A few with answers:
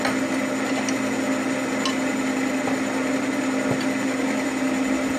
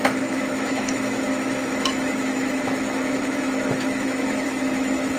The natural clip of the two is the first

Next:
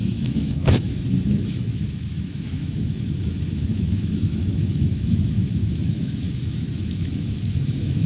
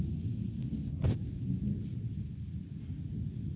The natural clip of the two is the second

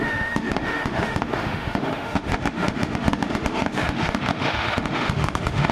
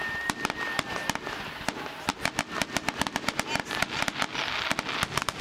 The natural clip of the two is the second